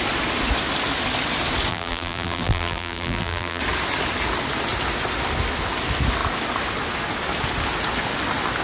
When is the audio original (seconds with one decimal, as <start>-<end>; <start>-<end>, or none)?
0.0-1.7; 3.6-8.6